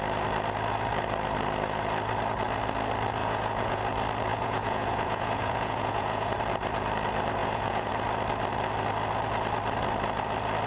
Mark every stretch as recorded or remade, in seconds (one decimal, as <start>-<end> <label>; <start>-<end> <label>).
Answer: 0.0-3.2 recorded; 3.2-3.8 remade; 3.8-4.3 recorded; 4.3-6.3 remade; 6.3-7.4 recorded; 7.4-7.9 remade; 7.9-10.7 recorded